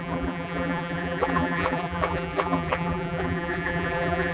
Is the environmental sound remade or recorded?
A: remade